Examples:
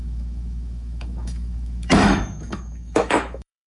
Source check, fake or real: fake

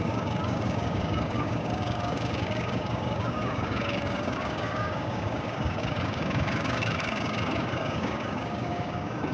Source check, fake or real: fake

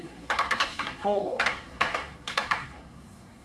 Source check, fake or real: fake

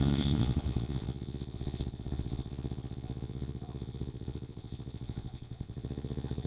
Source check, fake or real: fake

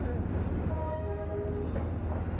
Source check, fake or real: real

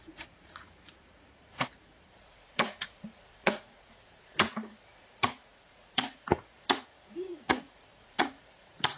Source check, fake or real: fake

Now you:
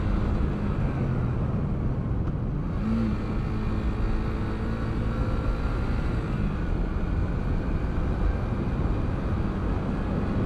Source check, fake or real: real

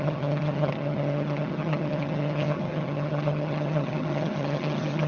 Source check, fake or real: fake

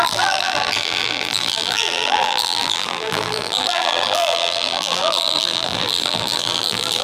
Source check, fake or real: fake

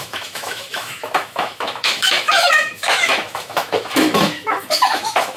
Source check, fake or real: fake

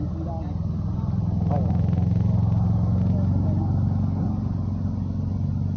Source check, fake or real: real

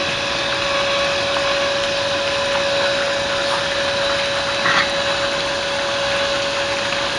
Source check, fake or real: real